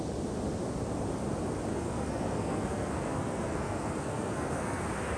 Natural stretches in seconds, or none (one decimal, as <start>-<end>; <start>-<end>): 0.0-1.7; 4.8-5.2